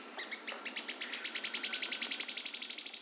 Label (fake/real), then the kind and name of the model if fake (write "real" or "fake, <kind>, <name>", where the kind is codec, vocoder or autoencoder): real